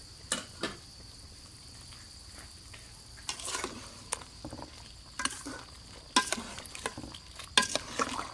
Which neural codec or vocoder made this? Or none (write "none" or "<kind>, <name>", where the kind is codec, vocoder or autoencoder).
none